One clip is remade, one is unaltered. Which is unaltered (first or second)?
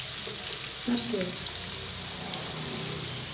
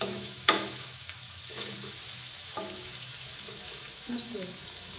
first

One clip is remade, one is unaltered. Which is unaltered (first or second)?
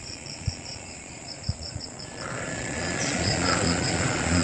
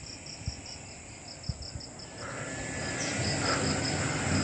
second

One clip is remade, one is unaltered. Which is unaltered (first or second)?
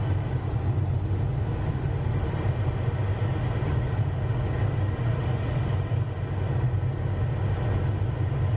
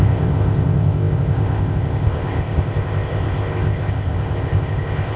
first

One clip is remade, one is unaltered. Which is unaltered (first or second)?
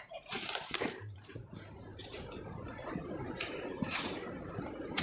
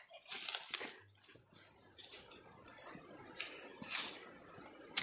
second